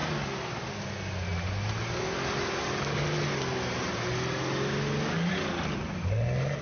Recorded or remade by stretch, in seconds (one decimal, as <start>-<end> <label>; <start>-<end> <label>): 0.0-6.6 recorded

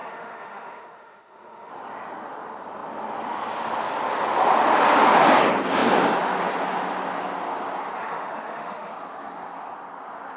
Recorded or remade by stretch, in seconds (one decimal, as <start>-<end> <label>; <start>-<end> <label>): 0.0-1.7 remade; 1.7-8.0 recorded; 8.0-8.9 remade; 8.9-10.4 recorded